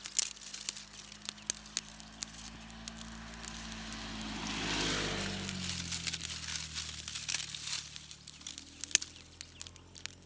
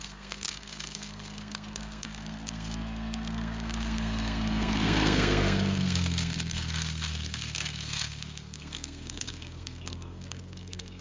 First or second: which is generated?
second